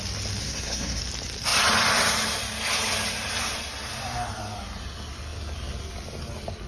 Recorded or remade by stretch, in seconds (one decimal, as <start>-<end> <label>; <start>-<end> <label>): 0.0-0.4 recorded; 0.4-1.0 remade; 1.0-6.7 recorded